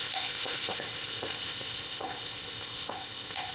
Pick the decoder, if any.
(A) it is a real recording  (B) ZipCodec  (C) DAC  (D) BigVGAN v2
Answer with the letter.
B